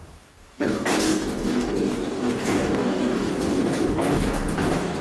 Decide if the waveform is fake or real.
fake